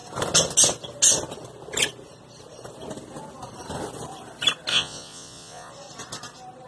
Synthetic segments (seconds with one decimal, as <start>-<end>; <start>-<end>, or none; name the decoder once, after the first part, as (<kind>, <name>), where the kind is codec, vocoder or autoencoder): 4.7-5.7 (vocoder, Vocos)